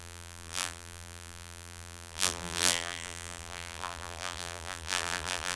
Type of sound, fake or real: fake